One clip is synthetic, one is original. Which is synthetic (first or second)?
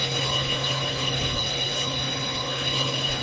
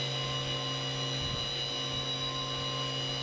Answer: first